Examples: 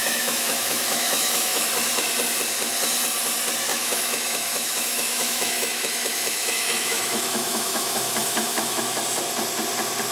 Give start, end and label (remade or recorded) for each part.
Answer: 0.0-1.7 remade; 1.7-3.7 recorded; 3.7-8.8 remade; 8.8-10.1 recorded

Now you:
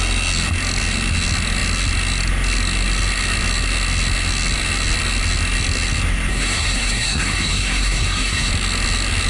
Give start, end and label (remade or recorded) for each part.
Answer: 0.0-6.3 recorded; 6.3-8.5 remade; 8.5-9.3 recorded

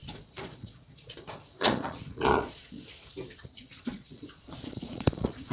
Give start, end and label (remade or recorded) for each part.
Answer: 0.0-2.9 remade; 2.9-3.6 recorded; 3.6-5.5 remade

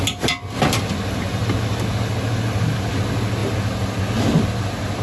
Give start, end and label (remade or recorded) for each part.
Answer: 0.0-5.0 recorded

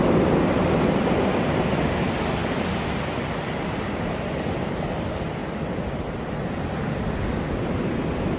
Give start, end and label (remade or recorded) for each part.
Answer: 0.0-8.4 recorded

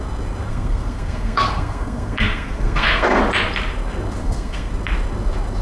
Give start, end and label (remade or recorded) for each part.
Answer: 0.0-0.5 recorded; 0.5-3.2 remade; 3.2-4.2 recorded; 4.2-4.7 remade; 4.7-5.6 recorded